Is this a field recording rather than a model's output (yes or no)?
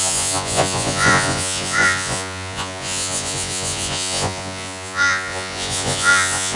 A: no